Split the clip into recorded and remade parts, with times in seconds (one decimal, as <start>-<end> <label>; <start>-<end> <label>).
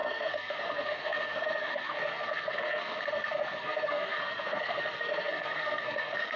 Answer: 0.0-6.4 remade